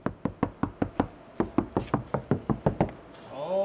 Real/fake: real